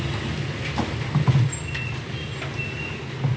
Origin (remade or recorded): recorded